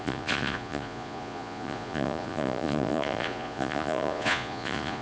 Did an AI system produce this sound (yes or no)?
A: yes